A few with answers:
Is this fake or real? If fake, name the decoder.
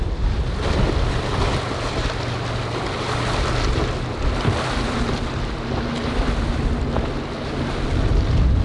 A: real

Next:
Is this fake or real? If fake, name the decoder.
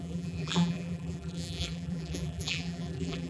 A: fake, vocoder, BigVGAN v2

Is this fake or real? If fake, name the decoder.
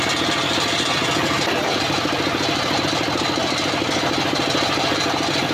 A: real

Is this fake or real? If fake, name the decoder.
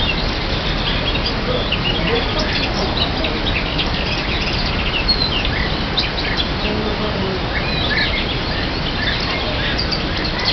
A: real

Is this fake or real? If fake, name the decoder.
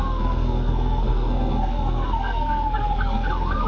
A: fake, codec, SNAC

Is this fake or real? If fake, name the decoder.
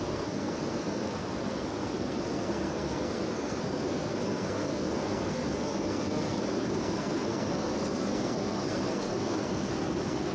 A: fake, codec, SNAC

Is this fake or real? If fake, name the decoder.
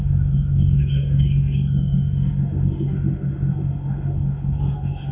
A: fake, autoencoder, DAC-VAE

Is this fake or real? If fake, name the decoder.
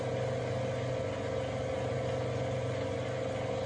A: real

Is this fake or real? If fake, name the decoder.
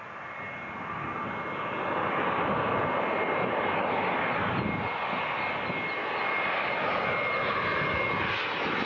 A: real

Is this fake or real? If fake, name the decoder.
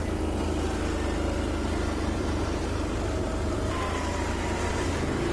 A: real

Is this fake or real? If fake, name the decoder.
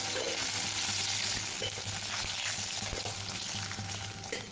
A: real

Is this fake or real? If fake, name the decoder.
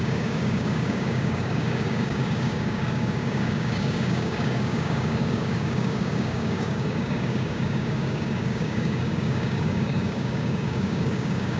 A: fake, codec, DAC